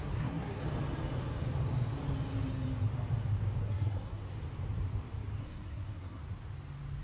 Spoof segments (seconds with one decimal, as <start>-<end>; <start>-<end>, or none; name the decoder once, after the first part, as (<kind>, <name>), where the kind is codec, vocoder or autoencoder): 0.0-0.6 (codec, SNAC); 3.6-4.2; 5.4-6.2